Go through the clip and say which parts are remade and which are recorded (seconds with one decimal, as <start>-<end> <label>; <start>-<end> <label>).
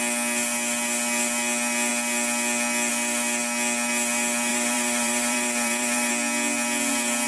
0.0-4.5 recorded; 4.5-6.1 remade; 6.1-7.3 recorded